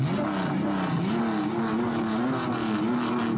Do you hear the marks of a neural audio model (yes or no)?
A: no